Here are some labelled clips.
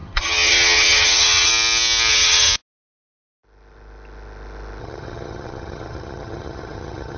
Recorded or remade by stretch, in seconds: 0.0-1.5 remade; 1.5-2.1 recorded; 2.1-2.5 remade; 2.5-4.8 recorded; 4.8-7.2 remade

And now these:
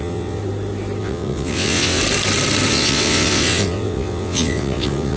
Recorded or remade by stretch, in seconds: 0.0-0.4 remade; 0.4-1.0 recorded; 1.0-2.0 remade; 2.0-2.7 recorded; 2.7-5.2 remade

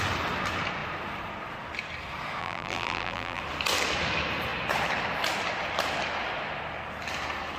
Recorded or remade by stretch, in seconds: 0.0-2.4 recorded; 2.4-3.4 remade; 3.4-7.6 recorded

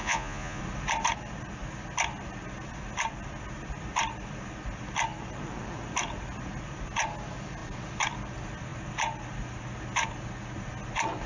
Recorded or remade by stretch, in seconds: 0.0-0.6 remade; 0.6-11.3 recorded

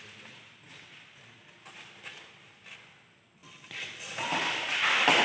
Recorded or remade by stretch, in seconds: 0.0-5.2 recorded